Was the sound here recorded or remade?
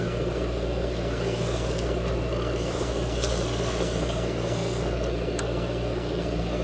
remade